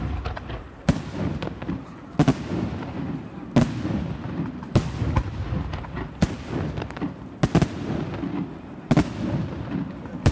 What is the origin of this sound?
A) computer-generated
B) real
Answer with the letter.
B